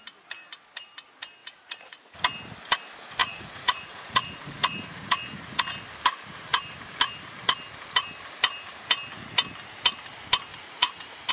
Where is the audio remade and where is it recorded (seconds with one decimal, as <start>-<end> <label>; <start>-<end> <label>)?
0.0-1.4 recorded; 1.4-2.2 remade; 2.2-3.2 recorded; 3.2-5.6 remade; 5.6-10.5 recorded; 10.5-11.3 remade